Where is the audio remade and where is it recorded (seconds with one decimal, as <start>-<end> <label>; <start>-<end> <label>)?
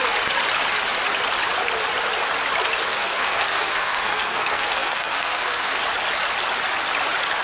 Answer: 0.0-2.9 recorded; 2.9-5.8 remade; 5.8-7.4 recorded